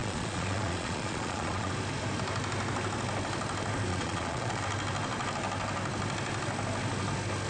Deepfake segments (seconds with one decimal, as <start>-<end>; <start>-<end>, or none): 0.0-1.7; 3.9-4.6